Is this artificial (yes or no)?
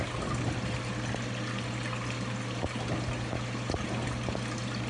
no